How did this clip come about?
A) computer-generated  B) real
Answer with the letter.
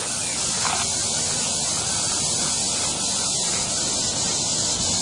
B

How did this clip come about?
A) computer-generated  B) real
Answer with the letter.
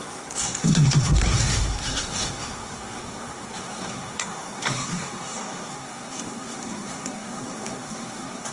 A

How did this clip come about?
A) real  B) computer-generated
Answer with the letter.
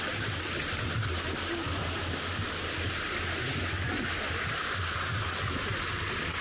A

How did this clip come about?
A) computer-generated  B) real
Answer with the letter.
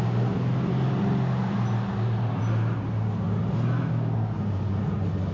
B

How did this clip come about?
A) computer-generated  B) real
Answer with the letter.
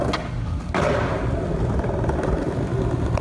B